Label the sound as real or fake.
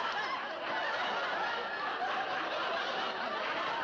real